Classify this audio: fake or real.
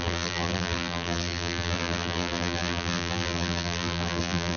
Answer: fake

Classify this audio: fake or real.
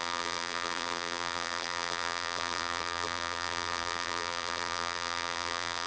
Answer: fake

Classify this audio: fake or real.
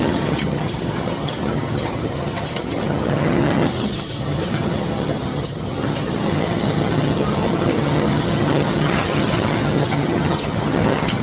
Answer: fake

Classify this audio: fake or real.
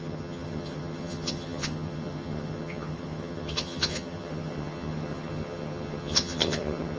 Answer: fake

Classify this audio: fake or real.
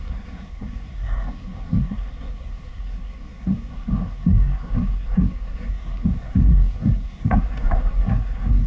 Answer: fake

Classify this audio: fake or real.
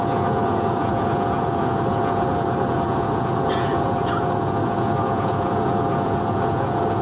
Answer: fake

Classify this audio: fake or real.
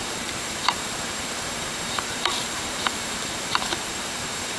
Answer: fake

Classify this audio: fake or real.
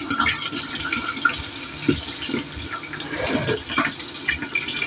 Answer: real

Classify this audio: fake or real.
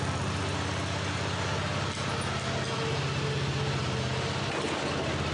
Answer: real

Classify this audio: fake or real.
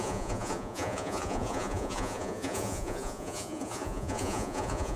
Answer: fake